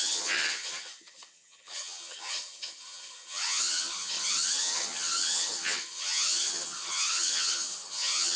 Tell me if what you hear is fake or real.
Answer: fake